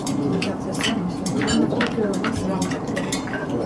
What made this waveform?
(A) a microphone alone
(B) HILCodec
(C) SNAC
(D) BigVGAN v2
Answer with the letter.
D